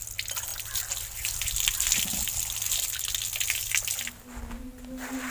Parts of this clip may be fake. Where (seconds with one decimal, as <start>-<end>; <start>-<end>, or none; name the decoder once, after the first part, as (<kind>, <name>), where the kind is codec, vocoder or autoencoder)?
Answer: none